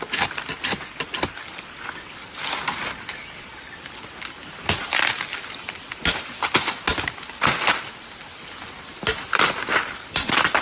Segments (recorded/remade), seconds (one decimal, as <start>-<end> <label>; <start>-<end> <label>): 0.0-3.2 recorded; 3.2-5.1 remade; 5.1-8.9 recorded; 8.9-10.6 remade